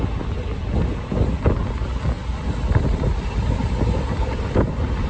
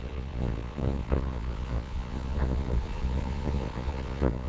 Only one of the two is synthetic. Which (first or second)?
second